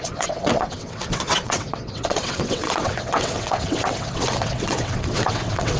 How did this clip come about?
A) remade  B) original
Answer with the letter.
A